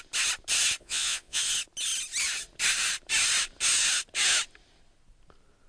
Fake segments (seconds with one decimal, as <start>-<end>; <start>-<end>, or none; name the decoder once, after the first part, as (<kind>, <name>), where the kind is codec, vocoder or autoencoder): 0.8-1.4 (vocoder, Vocos)